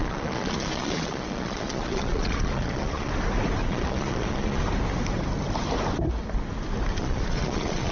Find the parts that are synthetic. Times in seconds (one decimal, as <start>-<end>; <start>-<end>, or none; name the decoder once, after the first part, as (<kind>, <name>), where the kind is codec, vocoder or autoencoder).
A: 0.0-3.1 (vocoder, Vocos); 3.6-4.6; 7.0-7.9

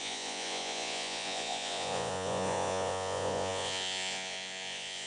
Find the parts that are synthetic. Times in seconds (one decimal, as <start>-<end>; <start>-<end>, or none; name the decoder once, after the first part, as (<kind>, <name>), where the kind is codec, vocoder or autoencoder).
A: 0.0-5.1 (vocoder, Vocos)